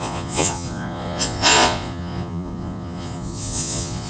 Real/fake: fake